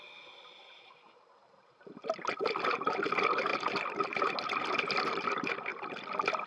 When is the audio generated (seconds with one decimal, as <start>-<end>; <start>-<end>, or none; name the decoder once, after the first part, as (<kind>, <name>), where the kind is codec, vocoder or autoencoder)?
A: none